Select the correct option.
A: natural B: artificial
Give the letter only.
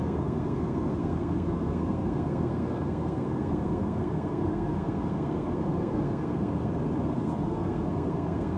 B